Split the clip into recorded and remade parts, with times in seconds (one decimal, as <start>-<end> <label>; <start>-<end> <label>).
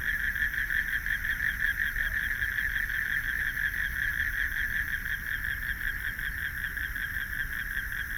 0.0-8.2 recorded